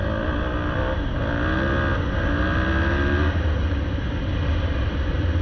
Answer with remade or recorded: recorded